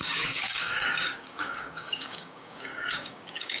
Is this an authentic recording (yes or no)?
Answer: no